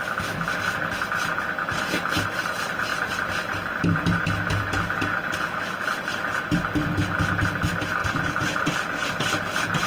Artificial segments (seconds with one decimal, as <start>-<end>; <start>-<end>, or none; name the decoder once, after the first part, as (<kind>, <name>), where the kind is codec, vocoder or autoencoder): 2.9-4.2 (vocoder, BigVGAN v2); 8.0-8.6